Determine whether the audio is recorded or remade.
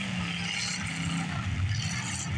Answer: recorded